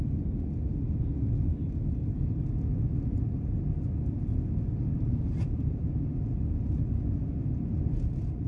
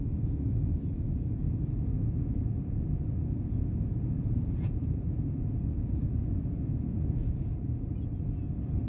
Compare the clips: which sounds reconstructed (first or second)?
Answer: second